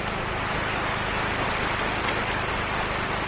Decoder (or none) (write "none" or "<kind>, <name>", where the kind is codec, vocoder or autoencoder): none